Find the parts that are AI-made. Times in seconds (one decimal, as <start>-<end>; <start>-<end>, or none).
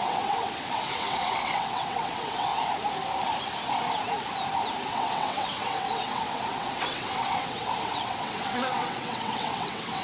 0.0-2.5; 4.9-10.0